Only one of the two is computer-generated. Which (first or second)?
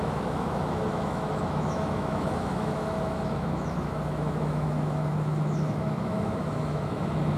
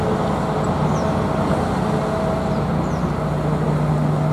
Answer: first